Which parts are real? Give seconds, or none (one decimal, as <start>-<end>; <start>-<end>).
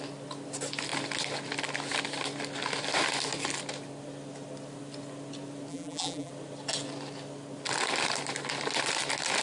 0.0-5.7; 6.3-9.4